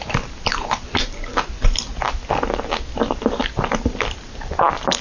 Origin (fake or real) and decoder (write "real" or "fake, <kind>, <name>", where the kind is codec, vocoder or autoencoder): real